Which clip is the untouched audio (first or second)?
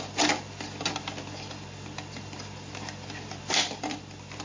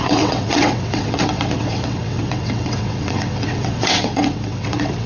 first